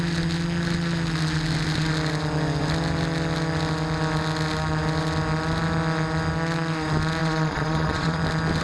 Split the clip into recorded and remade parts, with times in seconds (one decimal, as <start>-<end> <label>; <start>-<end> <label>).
0.0-7.2 recorded; 7.2-8.2 remade; 8.2-8.6 recorded